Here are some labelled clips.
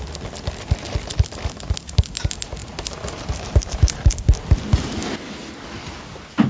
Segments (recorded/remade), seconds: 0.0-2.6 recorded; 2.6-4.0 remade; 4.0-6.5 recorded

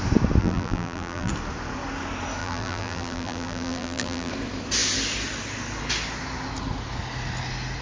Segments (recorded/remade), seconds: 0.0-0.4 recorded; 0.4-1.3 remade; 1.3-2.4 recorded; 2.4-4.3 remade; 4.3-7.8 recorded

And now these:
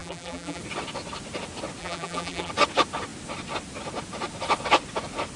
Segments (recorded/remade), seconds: 0.0-0.6 remade; 0.6-1.8 recorded; 1.8-2.5 remade; 2.5-5.4 recorded

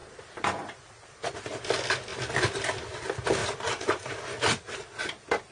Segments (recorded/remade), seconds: 0.0-0.9 remade; 0.9-2.1 recorded; 2.1-2.6 remade; 2.6-3.4 recorded; 3.4-4.8 remade; 4.8-5.5 recorded

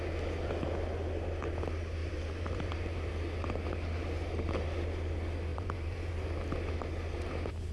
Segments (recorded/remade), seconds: 0.0-2.0 recorded; 2.0-3.1 remade; 3.1-5.5 recorded; 5.5-6.1 remade; 6.1-7.7 recorded